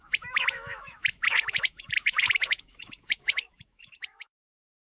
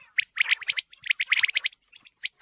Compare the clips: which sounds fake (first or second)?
first